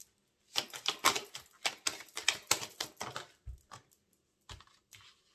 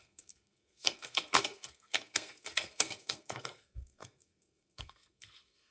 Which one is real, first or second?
first